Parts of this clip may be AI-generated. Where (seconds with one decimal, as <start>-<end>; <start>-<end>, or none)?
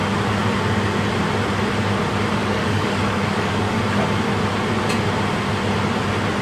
2.4-3.8